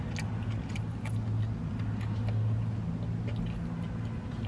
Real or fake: real